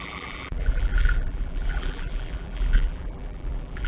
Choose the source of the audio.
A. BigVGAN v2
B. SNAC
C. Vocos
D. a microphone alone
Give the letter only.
A